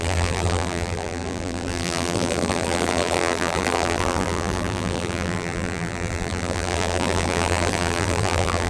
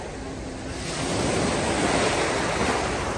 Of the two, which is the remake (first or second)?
first